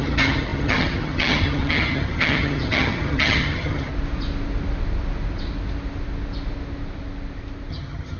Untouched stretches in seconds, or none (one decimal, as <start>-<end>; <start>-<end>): 3.9-7.7